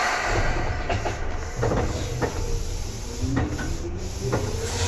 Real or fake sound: real